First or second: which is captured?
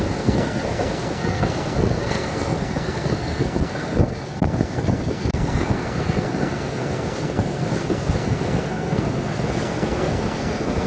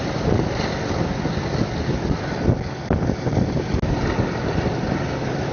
second